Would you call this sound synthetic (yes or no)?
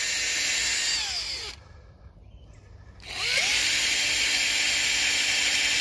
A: no